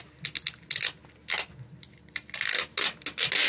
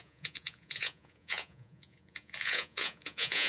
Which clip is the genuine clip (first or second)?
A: first